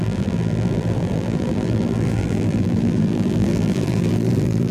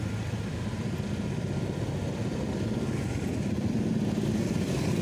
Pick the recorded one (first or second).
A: second